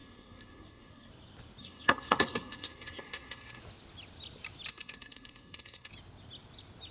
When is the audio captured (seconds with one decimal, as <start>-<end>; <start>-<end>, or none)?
1.1-1.6; 3.6-4.7; 5.9-6.9